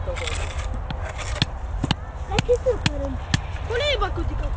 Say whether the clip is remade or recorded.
recorded